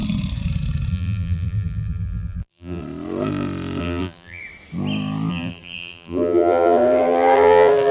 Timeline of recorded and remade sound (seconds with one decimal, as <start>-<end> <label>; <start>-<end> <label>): 0.0-0.9 recorded; 0.9-2.8 remade; 2.8-3.8 recorded; 3.8-4.4 remade; 4.4-5.3 recorded; 5.3-7.9 remade